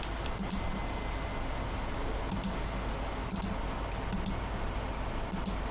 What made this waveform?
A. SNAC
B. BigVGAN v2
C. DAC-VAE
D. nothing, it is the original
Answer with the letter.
D